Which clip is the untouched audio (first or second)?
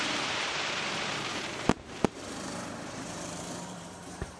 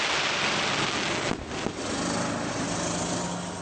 second